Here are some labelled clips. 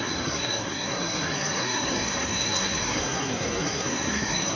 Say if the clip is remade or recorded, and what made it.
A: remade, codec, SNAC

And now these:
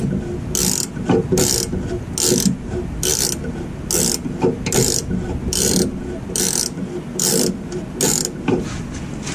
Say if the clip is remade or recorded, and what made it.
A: recorded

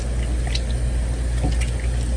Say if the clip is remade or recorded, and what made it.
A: recorded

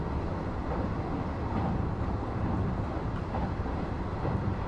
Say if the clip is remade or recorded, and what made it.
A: recorded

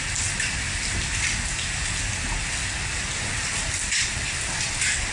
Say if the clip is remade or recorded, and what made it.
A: recorded